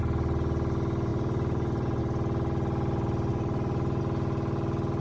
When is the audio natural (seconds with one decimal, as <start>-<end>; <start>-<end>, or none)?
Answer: 0.0-1.1; 2.0-3.3; 4.0-5.0